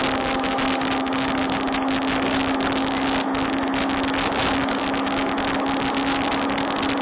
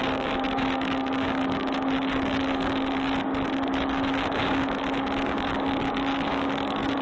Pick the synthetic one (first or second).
second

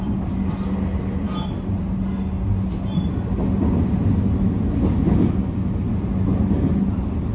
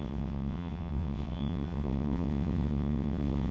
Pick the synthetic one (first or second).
second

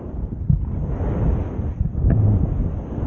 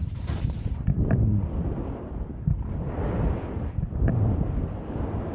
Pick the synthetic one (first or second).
second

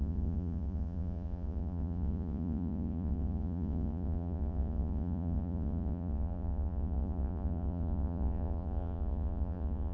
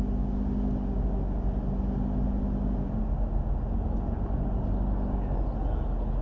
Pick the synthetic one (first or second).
first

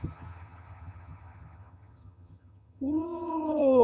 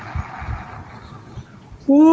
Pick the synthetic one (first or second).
first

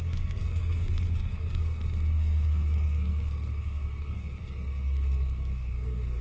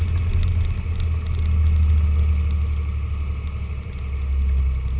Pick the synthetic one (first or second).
first